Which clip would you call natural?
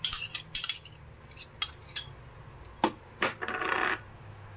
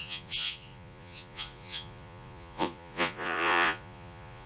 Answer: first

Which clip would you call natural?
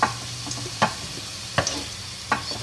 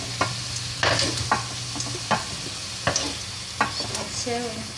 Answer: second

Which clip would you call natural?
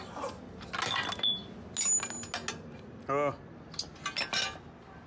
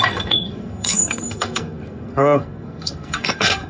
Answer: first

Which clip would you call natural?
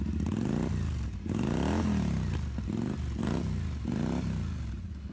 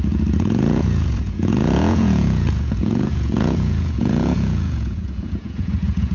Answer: first